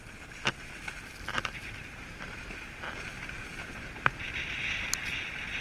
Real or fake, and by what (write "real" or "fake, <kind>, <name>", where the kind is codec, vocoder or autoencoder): real